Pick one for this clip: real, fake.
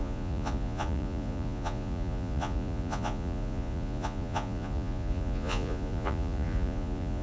fake